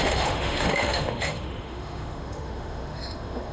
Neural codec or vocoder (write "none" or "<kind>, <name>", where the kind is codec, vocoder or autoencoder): autoencoder, DAC-VAE